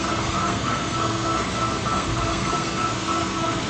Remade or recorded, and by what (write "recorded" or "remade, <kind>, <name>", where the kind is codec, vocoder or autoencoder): remade, codec, SNAC